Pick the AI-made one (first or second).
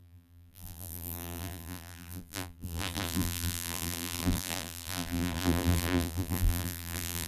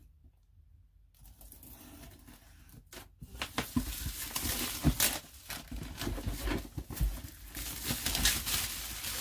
first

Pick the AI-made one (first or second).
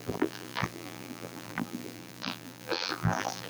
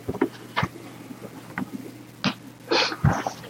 first